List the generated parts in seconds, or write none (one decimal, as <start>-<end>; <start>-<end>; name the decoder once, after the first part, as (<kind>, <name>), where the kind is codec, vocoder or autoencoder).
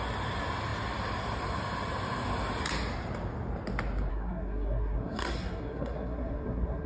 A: 4.1-6.9 (codec, SNAC)